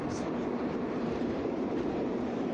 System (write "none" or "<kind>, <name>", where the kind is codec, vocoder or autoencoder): vocoder, BigVGAN v2